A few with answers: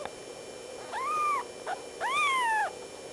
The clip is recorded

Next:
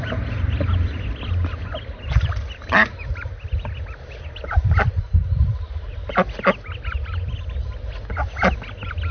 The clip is recorded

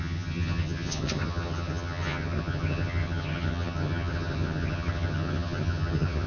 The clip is remade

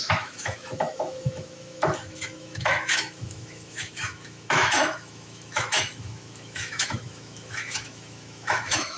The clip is remade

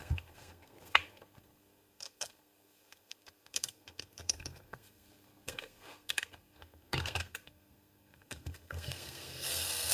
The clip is remade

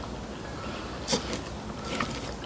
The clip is recorded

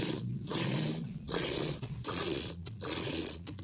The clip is remade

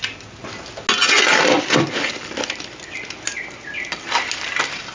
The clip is recorded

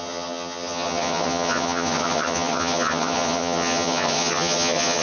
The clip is remade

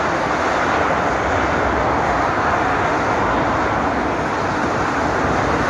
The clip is recorded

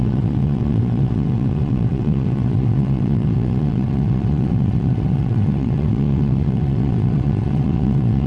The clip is remade